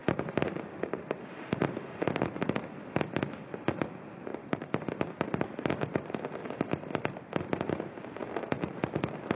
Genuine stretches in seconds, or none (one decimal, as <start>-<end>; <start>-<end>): 8.2-8.8

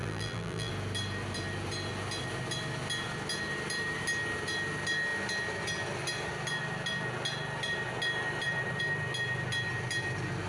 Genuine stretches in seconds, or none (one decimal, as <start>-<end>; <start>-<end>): 0.7-10.5

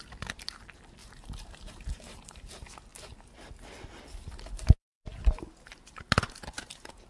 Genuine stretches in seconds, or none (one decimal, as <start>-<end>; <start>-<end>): 0.0-1.0; 2.5-7.1